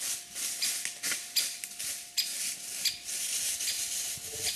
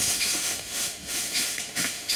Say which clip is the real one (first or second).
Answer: first